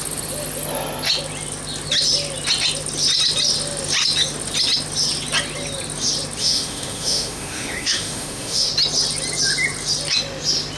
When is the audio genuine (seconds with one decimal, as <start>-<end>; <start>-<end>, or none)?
0.0-6.4; 8.7-10.8